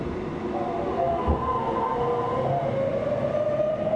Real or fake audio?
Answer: real